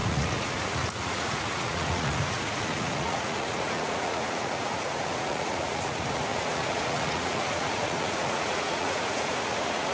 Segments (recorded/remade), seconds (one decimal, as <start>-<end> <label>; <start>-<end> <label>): 0.0-9.9 remade